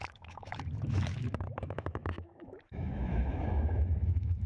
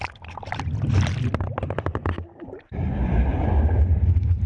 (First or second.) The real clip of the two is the second